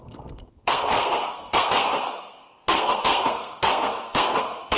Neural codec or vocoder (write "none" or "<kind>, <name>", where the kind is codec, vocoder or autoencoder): codec, SNAC